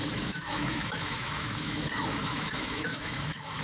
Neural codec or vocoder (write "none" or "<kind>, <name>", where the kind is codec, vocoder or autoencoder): autoencoder, DAC-VAE